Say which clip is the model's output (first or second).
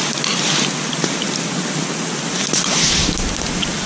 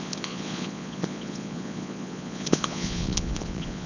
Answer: second